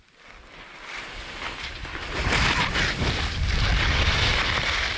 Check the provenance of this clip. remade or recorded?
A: recorded